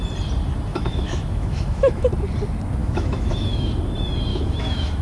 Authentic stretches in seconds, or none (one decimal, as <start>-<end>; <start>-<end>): 0.0-0.7; 2.1-2.8; 3.7-4.3